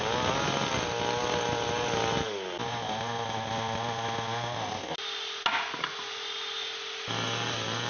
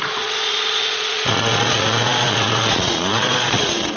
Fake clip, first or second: second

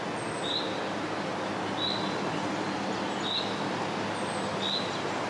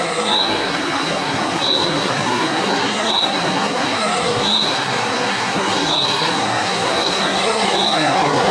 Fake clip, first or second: second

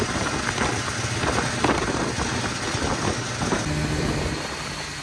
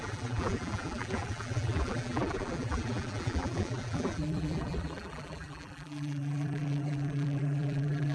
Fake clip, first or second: second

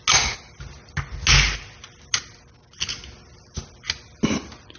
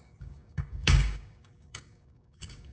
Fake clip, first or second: second